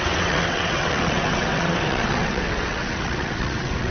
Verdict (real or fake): fake